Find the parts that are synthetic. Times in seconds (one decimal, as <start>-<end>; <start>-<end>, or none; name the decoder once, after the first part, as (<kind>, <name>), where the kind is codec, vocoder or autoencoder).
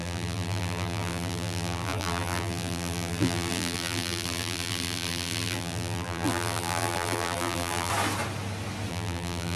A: 0.0-7.9 (vocoder, BigVGAN v2); 8.9-9.6